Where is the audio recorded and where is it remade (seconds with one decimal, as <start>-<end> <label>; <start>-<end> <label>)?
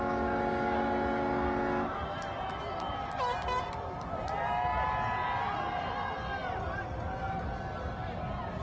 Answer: 0.0-8.6 recorded